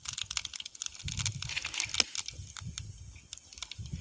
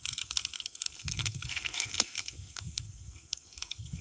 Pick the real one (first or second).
first